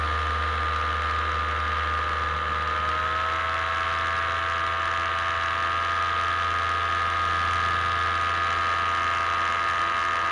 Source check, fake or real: real